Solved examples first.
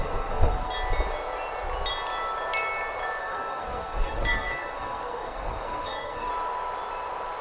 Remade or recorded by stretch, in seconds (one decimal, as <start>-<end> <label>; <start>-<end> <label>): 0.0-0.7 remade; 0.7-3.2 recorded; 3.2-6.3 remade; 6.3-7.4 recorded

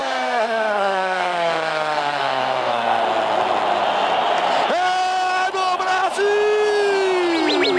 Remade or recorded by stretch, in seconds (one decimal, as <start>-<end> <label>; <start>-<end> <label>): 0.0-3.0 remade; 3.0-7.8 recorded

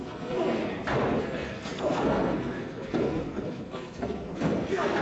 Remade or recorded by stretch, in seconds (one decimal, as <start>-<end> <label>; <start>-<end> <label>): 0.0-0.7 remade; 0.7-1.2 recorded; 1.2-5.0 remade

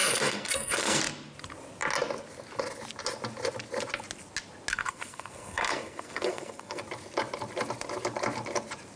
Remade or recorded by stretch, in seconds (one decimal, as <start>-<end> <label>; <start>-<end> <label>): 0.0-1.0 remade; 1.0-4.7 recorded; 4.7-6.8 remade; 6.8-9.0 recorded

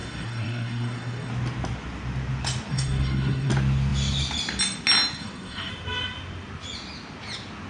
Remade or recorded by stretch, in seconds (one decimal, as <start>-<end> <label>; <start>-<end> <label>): 0.0-1.3 remade; 1.3-2.7 recorded; 2.7-3.5 remade; 3.5-5.1 recorded; 5.1-5.7 remade; 5.7-7.7 recorded

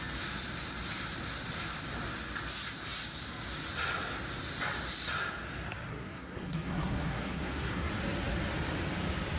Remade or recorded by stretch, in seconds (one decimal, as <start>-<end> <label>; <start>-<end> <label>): 0.0-5.9 recorded; 5.9-7.9 remade; 7.9-9.4 recorded